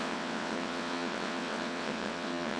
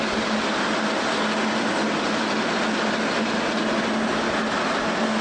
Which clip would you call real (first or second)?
second